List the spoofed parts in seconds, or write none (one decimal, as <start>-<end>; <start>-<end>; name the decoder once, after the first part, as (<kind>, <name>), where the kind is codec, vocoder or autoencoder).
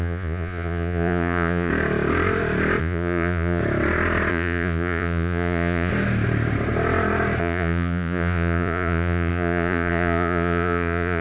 0.0-1.7 (vocoder, Vocos); 2.8-3.6; 4.3-5.9; 7.4-11.2